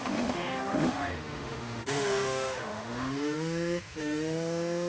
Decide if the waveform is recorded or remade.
remade